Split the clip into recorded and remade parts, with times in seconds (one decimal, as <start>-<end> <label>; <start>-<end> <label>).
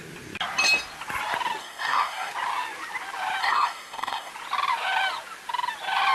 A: 0.0-1.6 recorded; 1.6-2.3 remade; 2.3-3.4 recorded; 3.4-4.3 remade; 4.3-6.1 recorded